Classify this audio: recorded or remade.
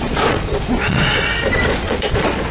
remade